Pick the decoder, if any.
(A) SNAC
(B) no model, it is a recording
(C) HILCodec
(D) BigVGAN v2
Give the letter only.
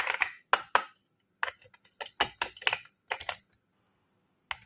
B